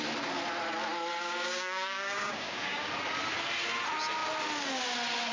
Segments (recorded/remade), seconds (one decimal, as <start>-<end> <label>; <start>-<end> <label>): 0.0-1.2 recorded; 1.2-2.9 remade; 2.9-5.3 recorded

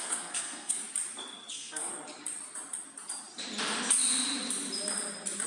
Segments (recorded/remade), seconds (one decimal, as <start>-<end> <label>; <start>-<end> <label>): 0.0-0.8 remade; 0.8-1.5 recorded; 1.5-1.9 remade; 1.9-5.5 recorded

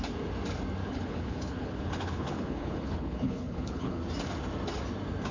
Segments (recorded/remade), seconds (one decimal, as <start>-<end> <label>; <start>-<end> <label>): 0.0-0.8 recorded; 0.8-4.0 remade; 4.0-5.3 recorded

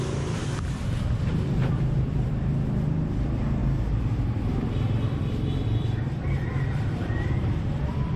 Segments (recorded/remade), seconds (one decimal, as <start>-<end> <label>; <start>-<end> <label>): 0.0-1.0 recorded; 1.0-8.2 remade

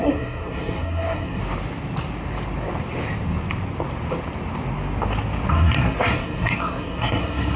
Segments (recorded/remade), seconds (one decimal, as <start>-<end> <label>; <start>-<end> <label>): 0.0-1.4 remade; 1.4-5.5 recorded; 5.5-7.6 remade

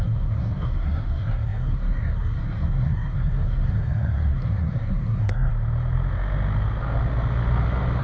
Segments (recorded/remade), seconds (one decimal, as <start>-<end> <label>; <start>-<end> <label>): 0.0-5.5 remade; 5.5-8.0 recorded